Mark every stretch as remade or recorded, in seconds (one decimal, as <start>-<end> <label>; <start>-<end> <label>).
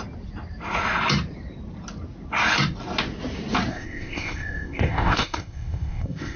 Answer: 0.0-3.7 recorded; 3.7-6.4 remade